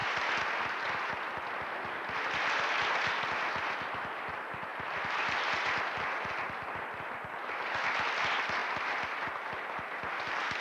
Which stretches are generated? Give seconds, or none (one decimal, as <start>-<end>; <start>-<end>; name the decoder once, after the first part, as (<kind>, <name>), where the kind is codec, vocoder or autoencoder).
4.7-5.9 (vocoder, BigVGAN v2)